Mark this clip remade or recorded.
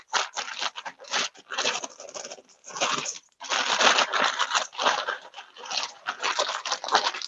remade